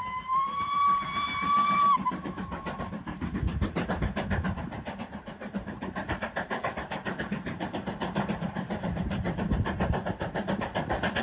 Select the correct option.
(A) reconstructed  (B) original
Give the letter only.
A